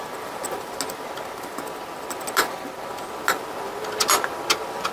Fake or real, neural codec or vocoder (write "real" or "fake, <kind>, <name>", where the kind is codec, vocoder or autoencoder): real